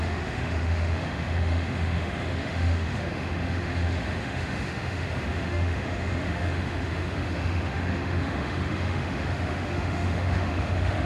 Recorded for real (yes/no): no